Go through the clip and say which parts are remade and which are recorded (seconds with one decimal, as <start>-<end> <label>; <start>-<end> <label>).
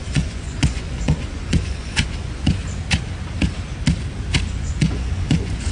0.0-2.6 remade; 2.6-4.5 recorded; 4.5-5.7 remade